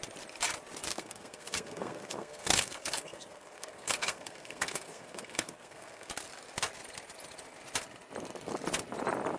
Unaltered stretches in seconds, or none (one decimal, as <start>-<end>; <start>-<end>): 0.0-0.9; 6.1-9.4